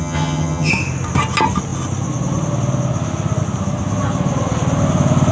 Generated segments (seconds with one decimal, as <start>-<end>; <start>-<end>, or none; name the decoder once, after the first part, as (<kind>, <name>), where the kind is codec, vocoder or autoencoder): 0.0-0.7 (vocoder, HiFi-GAN)